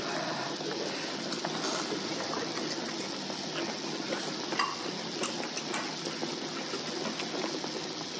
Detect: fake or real real